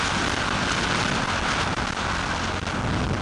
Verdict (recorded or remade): recorded